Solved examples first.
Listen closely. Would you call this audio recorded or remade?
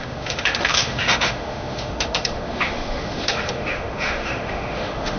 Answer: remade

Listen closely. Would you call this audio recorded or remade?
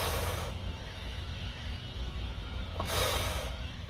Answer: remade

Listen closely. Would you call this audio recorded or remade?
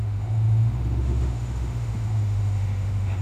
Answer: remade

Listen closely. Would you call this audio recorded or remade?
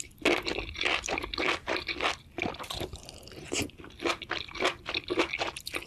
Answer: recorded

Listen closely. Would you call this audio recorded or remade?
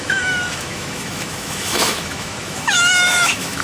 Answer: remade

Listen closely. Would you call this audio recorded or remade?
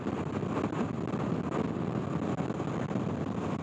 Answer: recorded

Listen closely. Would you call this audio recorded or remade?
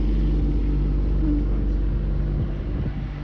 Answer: recorded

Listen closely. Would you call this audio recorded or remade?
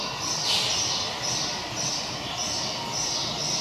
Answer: recorded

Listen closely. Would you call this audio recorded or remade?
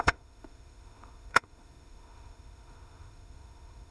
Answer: remade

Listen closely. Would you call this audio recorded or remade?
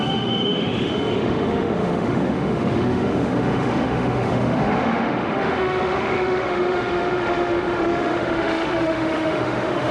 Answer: remade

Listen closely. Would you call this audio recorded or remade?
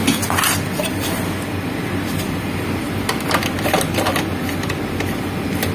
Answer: recorded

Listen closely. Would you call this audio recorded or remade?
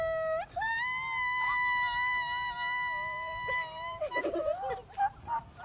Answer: recorded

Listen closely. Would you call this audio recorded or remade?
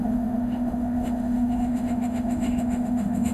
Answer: remade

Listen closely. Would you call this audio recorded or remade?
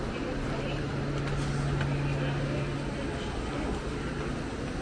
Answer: recorded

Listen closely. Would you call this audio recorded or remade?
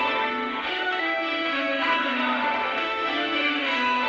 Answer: remade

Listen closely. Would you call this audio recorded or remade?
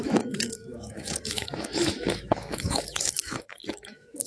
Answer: remade